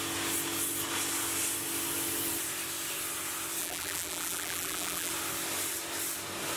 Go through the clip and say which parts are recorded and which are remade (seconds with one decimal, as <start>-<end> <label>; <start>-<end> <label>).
0.0-3.6 recorded; 3.6-5.1 remade; 5.1-6.6 recorded